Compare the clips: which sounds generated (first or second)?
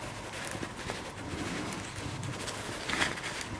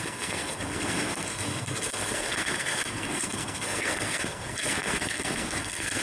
second